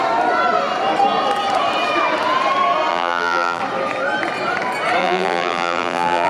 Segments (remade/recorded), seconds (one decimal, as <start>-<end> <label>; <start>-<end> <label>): 0.0-2.9 recorded; 2.9-3.6 remade; 3.6-5.0 recorded; 5.0-6.3 remade